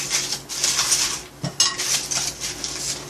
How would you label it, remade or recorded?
recorded